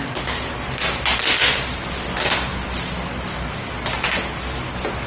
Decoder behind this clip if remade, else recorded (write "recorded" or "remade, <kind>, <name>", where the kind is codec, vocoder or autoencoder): recorded